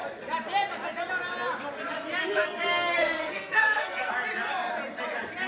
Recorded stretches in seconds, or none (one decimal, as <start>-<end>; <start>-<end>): 0.0-2.2; 4.1-5.5